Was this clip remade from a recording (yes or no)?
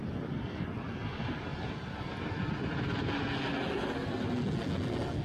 no